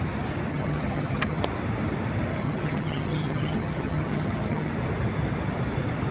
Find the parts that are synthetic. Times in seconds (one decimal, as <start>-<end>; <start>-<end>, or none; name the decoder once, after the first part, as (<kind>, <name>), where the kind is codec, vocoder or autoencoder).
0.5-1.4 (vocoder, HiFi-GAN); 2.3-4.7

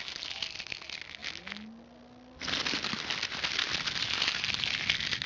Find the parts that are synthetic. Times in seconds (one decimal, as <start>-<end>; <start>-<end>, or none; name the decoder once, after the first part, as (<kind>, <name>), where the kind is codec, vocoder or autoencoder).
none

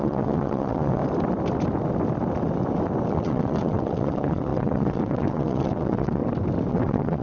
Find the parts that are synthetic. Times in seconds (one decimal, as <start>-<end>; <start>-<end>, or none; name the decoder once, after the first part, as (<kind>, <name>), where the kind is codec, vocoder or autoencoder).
0.0-1.0 (vocoder, WaveNeXt); 3.1-6.2; 6.7-7.2